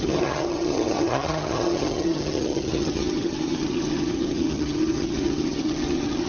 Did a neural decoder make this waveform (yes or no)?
yes